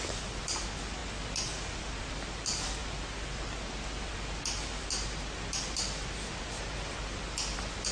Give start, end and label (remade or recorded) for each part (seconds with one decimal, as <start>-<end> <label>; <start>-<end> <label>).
0.0-7.9 recorded